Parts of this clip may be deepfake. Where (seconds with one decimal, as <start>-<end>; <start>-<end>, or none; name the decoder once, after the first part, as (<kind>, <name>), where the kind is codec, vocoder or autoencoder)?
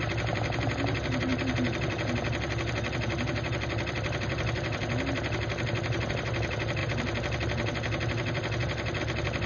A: none